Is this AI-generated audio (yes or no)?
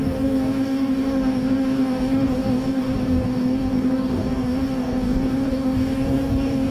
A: yes